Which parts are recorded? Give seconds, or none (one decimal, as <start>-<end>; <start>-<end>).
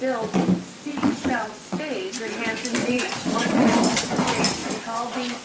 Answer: 0.0-0.9; 1.8-2.8; 3.8-5.4